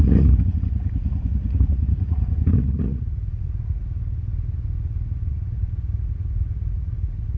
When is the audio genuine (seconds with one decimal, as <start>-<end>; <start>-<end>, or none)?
3.8-5.3